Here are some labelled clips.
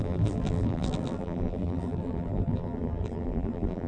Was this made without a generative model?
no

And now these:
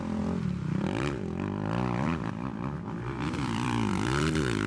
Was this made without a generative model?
no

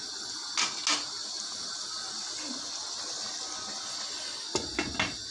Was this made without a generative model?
yes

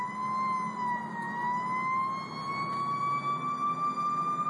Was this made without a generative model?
yes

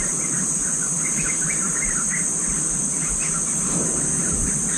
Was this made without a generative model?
yes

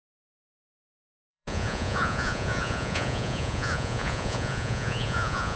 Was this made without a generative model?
no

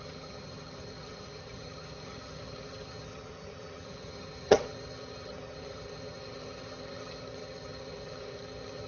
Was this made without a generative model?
no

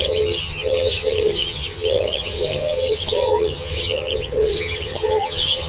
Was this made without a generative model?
no